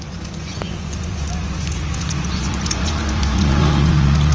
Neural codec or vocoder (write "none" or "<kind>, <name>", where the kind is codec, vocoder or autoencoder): vocoder, Vocos